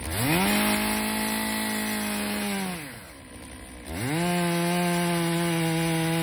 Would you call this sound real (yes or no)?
yes